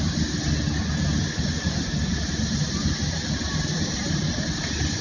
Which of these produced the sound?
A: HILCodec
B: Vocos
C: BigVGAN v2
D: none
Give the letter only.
D